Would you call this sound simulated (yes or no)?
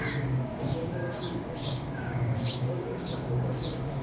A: yes